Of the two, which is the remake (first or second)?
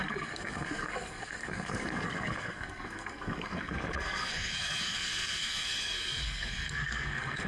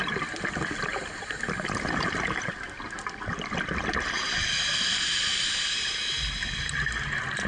first